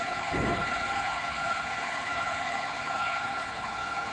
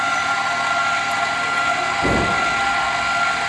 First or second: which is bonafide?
second